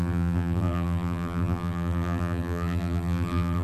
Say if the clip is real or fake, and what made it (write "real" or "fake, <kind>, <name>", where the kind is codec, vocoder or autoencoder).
fake, vocoder, BigVGAN v2